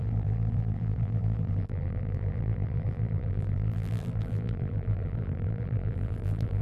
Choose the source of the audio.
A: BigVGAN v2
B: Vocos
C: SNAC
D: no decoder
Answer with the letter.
A